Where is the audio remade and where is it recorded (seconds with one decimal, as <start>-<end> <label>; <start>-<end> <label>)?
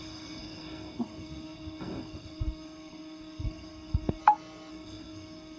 0.0-4.2 remade; 4.2-4.7 recorded; 4.7-5.6 remade